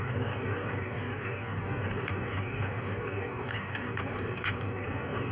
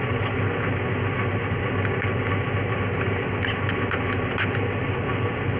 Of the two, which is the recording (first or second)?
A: second